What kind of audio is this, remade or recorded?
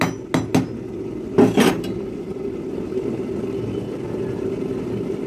recorded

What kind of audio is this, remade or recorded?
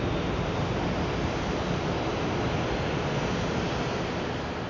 recorded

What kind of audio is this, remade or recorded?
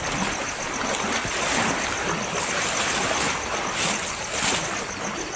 recorded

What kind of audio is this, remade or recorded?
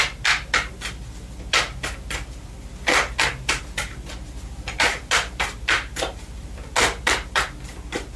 recorded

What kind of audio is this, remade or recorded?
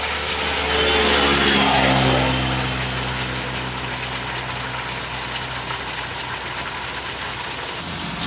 recorded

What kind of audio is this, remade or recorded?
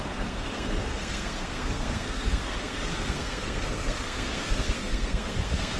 remade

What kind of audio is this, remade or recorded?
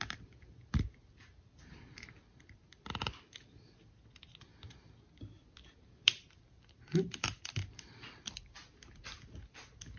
recorded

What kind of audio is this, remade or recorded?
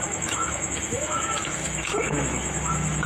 remade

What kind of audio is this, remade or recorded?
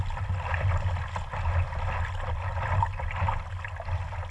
recorded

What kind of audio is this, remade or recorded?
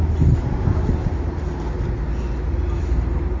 recorded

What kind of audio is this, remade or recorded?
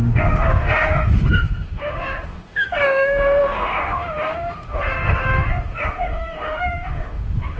remade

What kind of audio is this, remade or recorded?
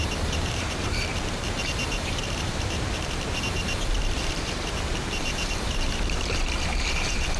remade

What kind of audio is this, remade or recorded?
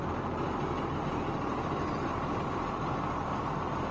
recorded